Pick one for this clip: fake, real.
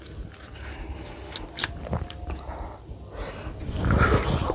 real